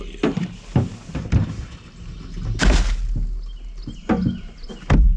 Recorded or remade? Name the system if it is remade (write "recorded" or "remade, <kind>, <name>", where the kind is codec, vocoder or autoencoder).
recorded